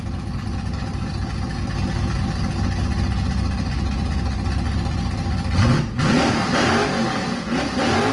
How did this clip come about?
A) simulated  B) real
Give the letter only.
B